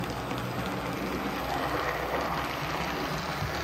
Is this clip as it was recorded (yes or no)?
yes